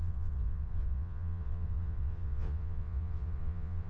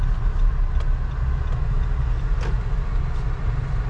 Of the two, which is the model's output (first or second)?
first